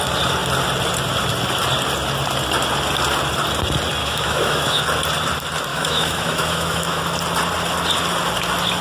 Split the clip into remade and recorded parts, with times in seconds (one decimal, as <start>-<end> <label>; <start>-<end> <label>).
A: 0.0-4.0 recorded; 4.0-4.8 remade; 4.8-5.7 recorded; 5.7-7.0 remade; 7.0-8.8 recorded

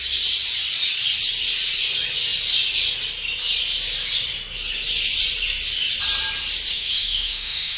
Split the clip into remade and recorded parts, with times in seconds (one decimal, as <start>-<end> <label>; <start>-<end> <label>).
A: 0.0-6.7 recorded; 6.7-7.8 remade

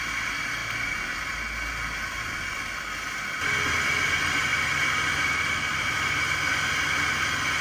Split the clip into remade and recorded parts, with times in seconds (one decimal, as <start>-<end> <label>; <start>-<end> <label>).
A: 0.0-7.6 recorded